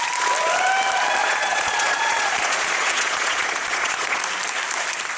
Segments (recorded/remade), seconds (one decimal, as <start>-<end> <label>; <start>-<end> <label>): 0.0-1.2 recorded; 1.2-4.2 remade; 4.2-5.2 recorded

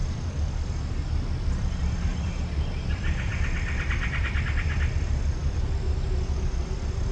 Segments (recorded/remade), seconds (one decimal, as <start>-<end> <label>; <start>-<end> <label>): 0.0-0.7 remade; 0.7-2.1 recorded; 2.1-4.7 remade; 4.7-5.4 recorded; 5.4-7.1 remade

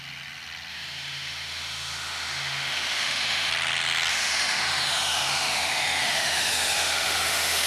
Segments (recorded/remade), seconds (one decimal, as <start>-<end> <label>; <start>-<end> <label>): 0.0-0.7 recorded; 0.7-3.5 remade; 3.5-4.1 recorded; 4.1-7.7 remade

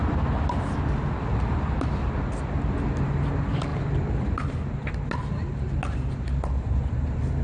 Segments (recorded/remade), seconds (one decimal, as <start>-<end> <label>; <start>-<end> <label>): 0.0-7.4 recorded

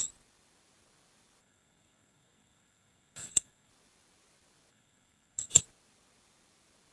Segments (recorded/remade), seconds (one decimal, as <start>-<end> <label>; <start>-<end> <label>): 0.0-1.4 recorded; 1.4-3.7 remade; 3.7-4.7 recorded; 4.7-5.5 remade; 5.5-6.9 recorded

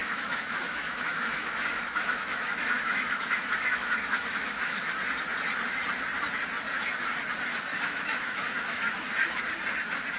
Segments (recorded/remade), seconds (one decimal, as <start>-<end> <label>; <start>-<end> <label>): 0.0-5.0 remade; 5.0-7.7 recorded; 7.7-9.1 remade; 9.1-10.2 recorded